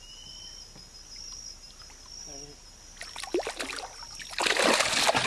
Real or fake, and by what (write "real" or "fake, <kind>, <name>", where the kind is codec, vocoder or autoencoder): real